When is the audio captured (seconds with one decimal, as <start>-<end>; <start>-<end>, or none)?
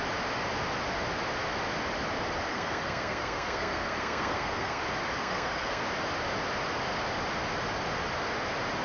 0.0-2.5; 4.8-5.2; 5.8-8.8